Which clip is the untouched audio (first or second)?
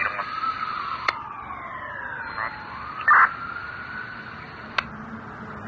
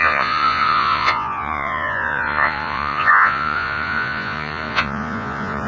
first